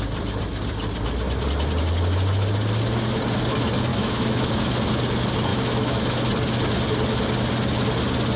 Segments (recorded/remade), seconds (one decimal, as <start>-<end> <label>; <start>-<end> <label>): 0.0-3.9 recorded; 3.9-4.5 remade; 4.5-5.5 recorded; 5.5-6.2 remade; 6.2-8.4 recorded